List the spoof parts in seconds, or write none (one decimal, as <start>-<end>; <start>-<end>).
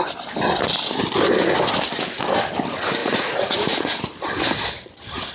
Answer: 3.0-4.0